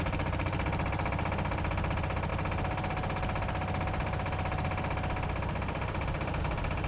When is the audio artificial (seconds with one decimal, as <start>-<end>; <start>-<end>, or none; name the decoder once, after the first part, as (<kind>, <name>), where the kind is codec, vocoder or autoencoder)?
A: none